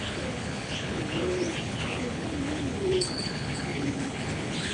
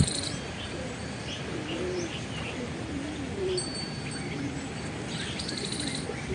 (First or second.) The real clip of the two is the second